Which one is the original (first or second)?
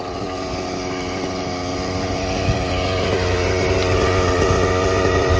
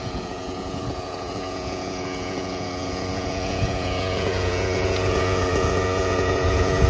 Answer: first